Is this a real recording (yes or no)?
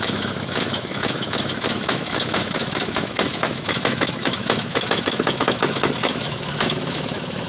no